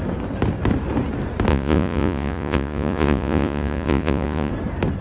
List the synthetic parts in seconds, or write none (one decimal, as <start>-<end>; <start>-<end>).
1.5-4.5